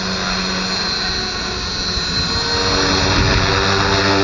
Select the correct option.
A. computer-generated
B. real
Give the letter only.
B